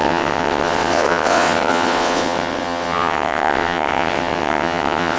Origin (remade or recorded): remade